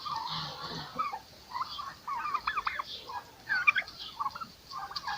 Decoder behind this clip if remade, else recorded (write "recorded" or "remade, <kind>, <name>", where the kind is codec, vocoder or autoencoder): recorded